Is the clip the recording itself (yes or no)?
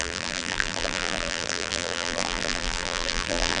no